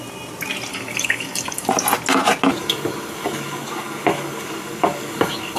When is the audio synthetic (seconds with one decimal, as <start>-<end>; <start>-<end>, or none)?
0.7-1.7; 2.6-5.6